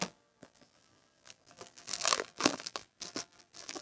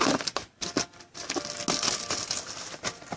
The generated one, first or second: first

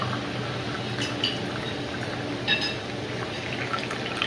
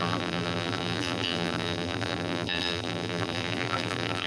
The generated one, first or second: second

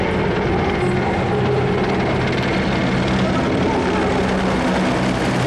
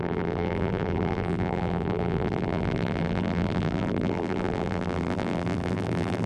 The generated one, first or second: second